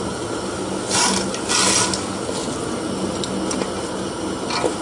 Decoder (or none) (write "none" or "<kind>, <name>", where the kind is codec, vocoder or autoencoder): none